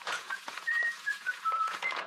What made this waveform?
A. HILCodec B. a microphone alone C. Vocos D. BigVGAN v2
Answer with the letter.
C